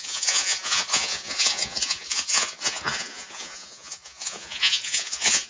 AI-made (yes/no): yes